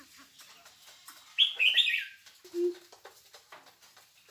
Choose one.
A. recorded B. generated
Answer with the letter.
A